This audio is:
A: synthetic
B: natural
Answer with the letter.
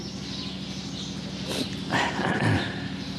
B